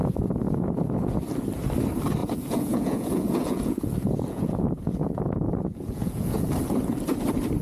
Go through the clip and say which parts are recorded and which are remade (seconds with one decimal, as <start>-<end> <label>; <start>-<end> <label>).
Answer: 0.0-1.1 remade; 1.1-2.2 recorded; 2.2-6.5 remade; 6.5-7.6 recorded

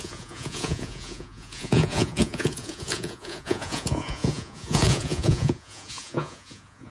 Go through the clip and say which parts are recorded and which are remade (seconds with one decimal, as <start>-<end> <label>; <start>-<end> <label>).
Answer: 0.0-6.9 remade

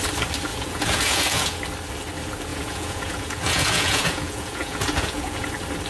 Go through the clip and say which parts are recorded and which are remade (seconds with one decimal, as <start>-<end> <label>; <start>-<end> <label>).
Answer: 0.0-0.5 recorded; 0.5-1.6 remade; 1.6-2.5 recorded; 2.5-5.5 remade; 5.5-5.9 recorded

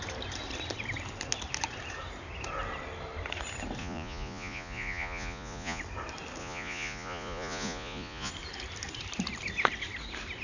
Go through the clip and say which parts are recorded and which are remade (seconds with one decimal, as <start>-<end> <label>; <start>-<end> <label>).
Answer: 0.0-3.8 recorded; 3.8-5.8 remade; 5.8-6.4 recorded; 6.4-8.3 remade; 8.3-10.4 recorded

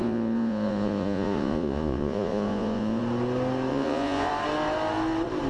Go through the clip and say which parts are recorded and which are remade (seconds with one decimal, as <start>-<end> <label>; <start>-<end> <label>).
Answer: 0.0-3.0 remade; 3.0-3.7 recorded; 3.7-4.3 remade; 4.3-5.5 recorded

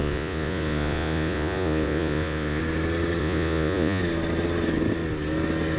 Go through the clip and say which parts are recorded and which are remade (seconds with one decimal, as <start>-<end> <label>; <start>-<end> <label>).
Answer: 0.0-2.6 remade; 2.6-3.2 recorded; 3.2-4.0 remade; 4.0-5.8 recorded

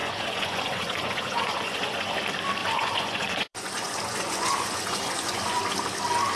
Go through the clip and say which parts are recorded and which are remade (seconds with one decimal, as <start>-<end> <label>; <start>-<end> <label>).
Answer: 0.0-2.1 remade; 2.1-2.6 recorded; 2.6-5.6 remade; 5.6-6.4 recorded